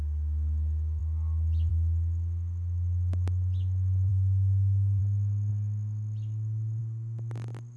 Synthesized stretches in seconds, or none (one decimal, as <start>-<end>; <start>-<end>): 4.1-5.0